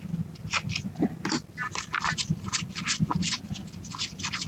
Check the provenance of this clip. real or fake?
real